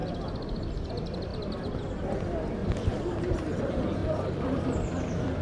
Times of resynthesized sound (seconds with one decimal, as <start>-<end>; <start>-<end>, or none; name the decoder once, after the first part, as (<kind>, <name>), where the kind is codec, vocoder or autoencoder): 0.0-0.9 (vocoder, BigVGAN v2); 2.6-3.6